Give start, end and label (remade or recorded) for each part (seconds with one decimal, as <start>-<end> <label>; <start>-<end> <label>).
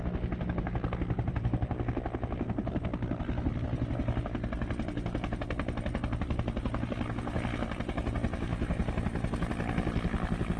0.0-10.6 recorded